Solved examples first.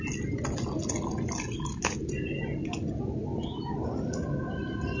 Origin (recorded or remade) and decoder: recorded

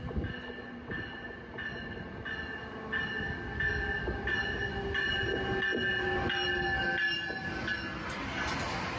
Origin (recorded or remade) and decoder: recorded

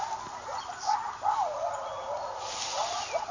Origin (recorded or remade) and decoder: recorded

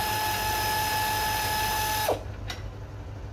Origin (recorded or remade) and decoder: recorded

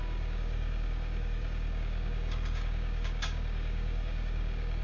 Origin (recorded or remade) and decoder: remade, codec, DAC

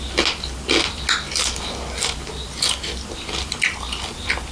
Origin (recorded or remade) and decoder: recorded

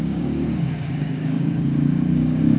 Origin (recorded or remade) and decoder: remade, codec, DAC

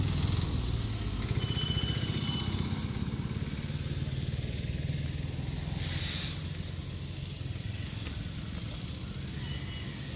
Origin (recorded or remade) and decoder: recorded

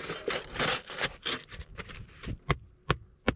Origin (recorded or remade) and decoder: recorded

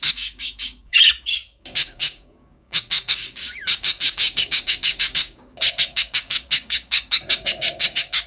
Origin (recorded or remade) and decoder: remade, codec, DAC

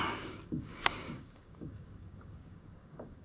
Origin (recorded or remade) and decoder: remade, codec, DAC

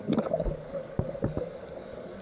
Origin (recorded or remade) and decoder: remade, codec, DAC